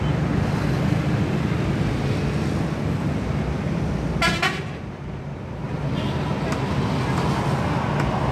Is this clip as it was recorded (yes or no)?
yes